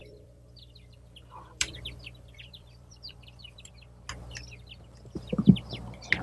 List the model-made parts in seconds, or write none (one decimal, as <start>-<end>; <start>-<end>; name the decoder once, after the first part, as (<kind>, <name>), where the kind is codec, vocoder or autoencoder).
0.0-3.7 (vocoder, BigVGAN v2)

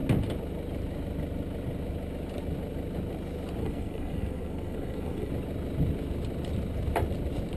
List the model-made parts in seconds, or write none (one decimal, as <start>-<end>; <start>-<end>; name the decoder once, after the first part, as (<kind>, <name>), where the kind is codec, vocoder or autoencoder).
3.6-5.3 (codec, SNAC)